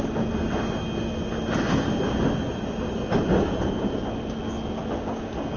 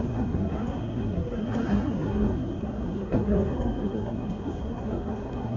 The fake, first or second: second